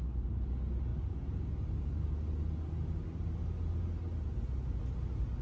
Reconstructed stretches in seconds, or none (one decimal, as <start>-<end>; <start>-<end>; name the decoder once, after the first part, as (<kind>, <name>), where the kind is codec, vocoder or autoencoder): none